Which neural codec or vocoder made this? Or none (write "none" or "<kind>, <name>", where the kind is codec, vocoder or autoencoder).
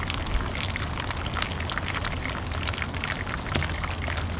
none